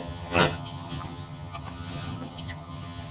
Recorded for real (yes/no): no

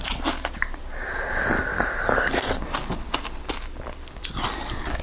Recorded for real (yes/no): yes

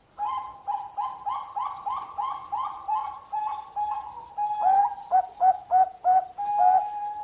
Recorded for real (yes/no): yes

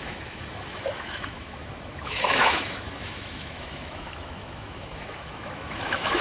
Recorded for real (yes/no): no